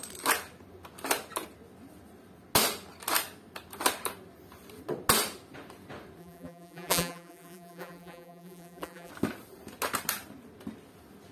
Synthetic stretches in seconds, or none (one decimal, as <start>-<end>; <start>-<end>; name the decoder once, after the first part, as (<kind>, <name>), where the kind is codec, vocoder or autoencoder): 6.2-9.1 (vocoder, BigVGAN v2)